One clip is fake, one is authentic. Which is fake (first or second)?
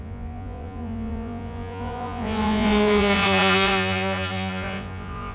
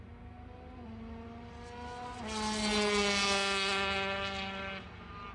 first